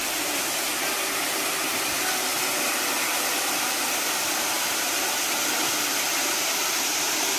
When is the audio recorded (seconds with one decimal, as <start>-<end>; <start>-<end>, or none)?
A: 0.7-1.5; 2.3-3.5

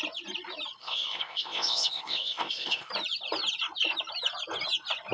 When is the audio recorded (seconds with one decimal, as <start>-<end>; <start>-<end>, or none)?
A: 0.0-0.8; 2.9-5.1

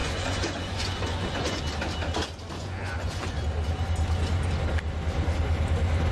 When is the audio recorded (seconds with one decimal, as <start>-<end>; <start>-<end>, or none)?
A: 1.6-2.6; 3.4-6.1